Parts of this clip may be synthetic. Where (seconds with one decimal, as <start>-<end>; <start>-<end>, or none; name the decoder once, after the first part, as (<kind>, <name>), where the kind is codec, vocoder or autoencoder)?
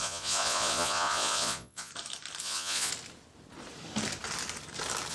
0.0-1.9 (vocoder, Vocos); 2.4-2.9